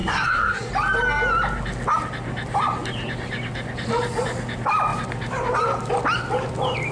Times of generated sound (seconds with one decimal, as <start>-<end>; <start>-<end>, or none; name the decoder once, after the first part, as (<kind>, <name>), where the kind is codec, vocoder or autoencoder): 0.0-0.7 (codec, SNAC)